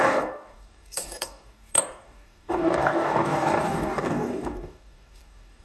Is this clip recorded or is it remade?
remade